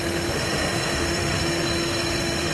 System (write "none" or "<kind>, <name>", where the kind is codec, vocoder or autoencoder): autoencoder, DAC-VAE